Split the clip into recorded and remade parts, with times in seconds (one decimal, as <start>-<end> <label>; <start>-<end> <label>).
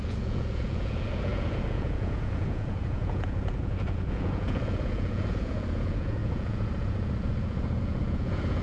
0.0-8.6 remade